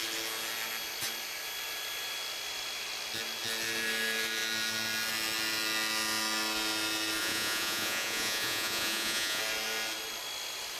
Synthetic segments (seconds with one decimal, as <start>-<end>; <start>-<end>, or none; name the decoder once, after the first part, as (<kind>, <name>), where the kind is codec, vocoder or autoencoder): 7.2-9.4 (vocoder, Vocos)